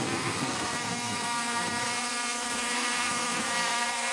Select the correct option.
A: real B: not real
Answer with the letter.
B